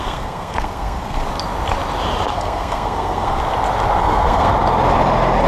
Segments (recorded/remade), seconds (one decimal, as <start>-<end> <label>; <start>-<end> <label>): 0.0-1.2 remade; 1.2-2.3 recorded; 2.3-3.4 remade; 3.4-4.0 recorded; 4.0-4.5 remade; 4.5-5.5 recorded